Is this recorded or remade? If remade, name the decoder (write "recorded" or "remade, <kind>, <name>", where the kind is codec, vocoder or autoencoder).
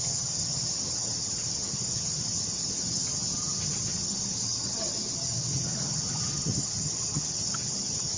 remade, vocoder, HiFi-GAN